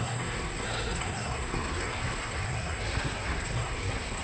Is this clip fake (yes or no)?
yes